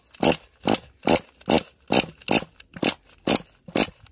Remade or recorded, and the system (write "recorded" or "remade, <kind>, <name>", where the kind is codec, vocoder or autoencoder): recorded